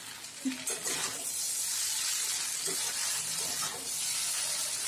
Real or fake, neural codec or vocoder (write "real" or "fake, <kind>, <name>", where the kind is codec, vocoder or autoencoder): real